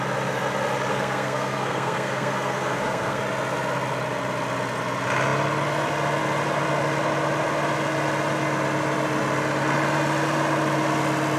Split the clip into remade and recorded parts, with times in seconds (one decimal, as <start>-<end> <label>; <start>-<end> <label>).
0.0-0.9 recorded; 0.9-3.2 remade; 3.2-11.4 recorded